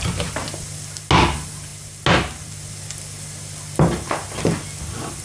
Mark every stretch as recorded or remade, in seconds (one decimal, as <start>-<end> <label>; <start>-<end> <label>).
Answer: 0.0-5.2 recorded